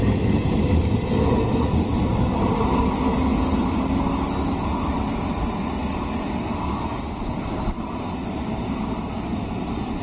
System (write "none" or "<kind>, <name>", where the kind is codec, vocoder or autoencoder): none